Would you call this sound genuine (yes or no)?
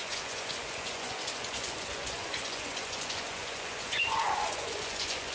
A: no